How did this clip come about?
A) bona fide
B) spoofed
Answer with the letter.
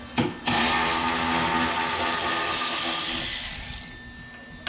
A